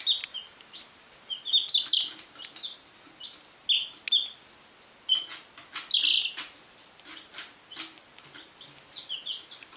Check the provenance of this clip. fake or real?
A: real